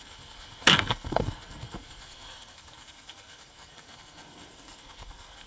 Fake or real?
fake